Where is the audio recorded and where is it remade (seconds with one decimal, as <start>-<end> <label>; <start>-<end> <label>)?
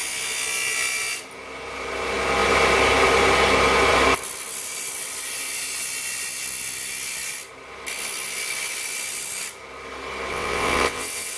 0.0-10.3 recorded; 10.3-11.4 remade